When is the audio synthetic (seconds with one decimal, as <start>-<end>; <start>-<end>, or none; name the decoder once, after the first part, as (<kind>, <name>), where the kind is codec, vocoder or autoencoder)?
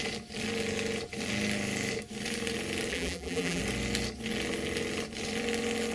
2.9-3.6 (vocoder, BigVGAN v2)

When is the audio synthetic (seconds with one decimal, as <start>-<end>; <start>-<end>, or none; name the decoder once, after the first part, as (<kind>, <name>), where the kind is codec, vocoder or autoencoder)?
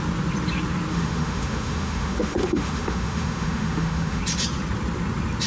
0.9-4.2 (autoencoder, DAC-VAE)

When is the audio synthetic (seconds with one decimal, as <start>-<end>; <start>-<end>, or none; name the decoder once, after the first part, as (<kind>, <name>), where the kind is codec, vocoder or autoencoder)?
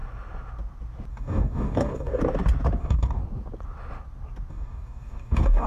1.1-2.2 (codec, DAC); 2.8-3.2; 4.5-5.7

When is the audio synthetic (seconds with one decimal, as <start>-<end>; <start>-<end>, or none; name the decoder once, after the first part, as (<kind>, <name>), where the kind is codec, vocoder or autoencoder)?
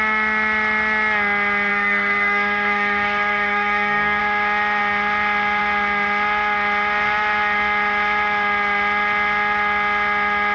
1.7-4.2 (codec, SNAC)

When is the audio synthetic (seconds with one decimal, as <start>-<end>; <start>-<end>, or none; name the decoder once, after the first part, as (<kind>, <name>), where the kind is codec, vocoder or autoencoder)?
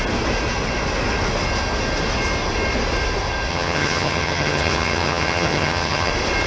3.5-6.1 (vocoder, HiFi-GAN)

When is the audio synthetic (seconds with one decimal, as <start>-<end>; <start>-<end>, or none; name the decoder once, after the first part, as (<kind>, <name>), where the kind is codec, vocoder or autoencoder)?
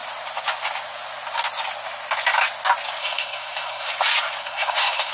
3.0-3.9 (codec, SNAC); 4.4-5.1